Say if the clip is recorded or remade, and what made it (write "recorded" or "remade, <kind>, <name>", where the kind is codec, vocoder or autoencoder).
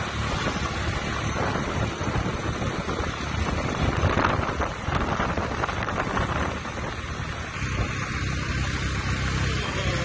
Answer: recorded